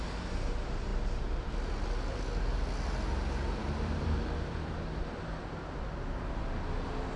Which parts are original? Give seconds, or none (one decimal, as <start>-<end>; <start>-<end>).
0.0-0.9; 1.5-3.6; 5.0-7.2